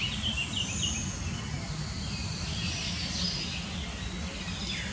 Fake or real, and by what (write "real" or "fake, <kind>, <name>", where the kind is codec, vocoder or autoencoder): real